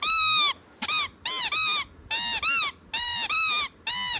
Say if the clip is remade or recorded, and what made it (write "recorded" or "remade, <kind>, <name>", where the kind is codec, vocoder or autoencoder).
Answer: recorded